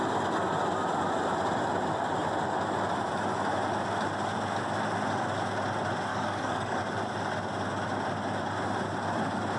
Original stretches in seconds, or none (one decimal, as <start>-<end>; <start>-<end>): 0.0-6.1; 6.8-9.6